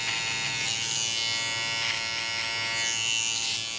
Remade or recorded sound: recorded